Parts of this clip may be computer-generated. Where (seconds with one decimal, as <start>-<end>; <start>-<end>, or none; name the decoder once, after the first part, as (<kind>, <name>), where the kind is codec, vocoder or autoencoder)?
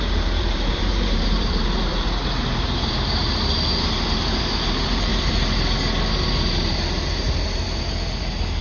0.0-5.1 (vocoder, BigVGAN v2); 6.3-8.6